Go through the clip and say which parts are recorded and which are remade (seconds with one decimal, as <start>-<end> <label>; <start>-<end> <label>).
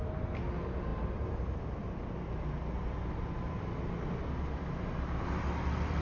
0.0-6.0 recorded